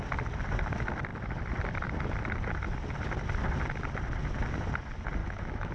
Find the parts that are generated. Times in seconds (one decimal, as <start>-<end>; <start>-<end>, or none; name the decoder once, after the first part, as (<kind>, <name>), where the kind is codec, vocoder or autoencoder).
5.2-5.7 (autoencoder, DAC-VAE)